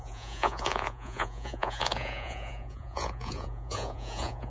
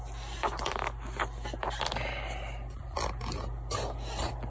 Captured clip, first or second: second